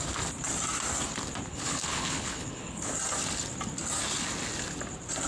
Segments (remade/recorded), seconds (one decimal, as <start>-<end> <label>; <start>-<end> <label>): 0.0-1.5 recorded; 1.5-2.9 remade; 2.9-5.3 recorded